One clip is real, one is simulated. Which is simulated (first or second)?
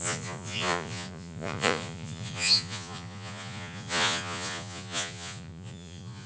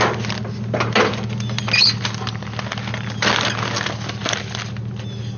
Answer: first